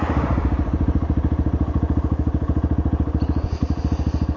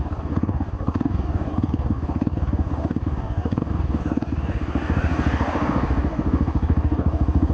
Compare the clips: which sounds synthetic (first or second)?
second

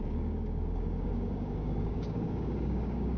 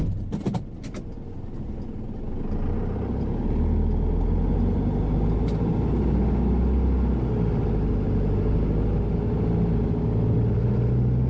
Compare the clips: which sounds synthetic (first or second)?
first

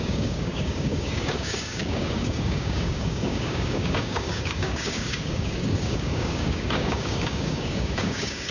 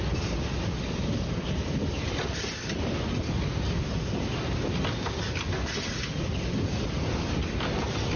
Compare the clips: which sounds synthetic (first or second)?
first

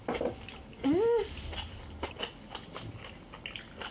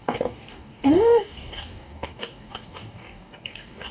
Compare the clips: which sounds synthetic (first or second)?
second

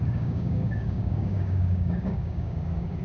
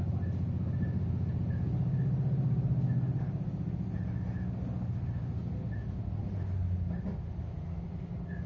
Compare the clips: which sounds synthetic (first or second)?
first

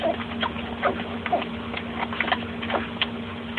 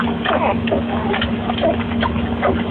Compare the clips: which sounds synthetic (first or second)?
second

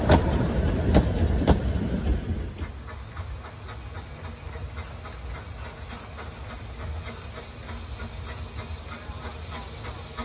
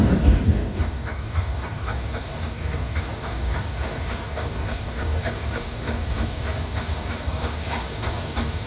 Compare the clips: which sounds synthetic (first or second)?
second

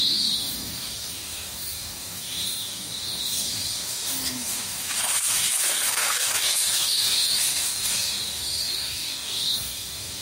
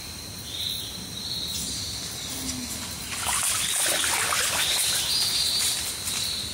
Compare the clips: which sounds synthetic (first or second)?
first